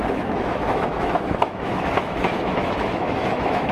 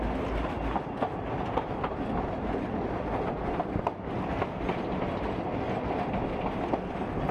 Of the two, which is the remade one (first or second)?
first